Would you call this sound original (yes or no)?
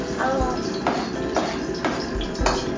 yes